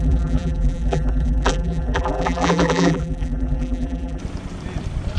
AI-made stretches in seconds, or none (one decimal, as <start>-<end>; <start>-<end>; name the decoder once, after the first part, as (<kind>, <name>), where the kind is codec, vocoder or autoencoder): 0.0-4.2 (vocoder, BigVGAN v2)